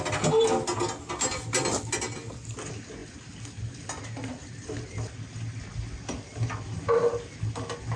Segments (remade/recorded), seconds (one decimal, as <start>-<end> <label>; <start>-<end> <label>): 0.0-8.0 recorded